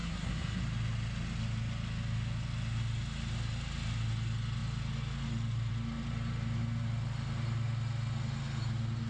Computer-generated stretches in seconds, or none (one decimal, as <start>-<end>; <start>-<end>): 0.0-0.6